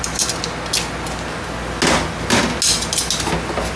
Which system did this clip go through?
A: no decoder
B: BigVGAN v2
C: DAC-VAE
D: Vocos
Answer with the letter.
A